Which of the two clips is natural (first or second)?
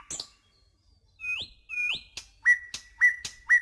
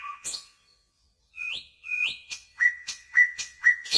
first